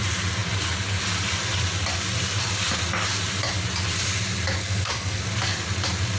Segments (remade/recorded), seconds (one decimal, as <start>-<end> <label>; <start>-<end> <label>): 0.0-4.6 recorded; 4.6-5.2 remade; 5.2-6.2 recorded